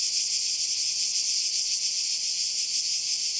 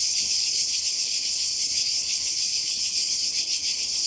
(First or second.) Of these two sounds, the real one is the first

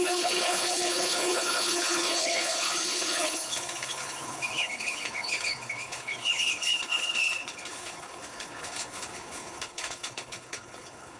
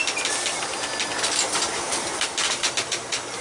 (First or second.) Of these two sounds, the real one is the second